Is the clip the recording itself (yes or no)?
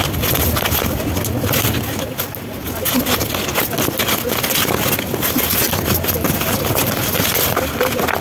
yes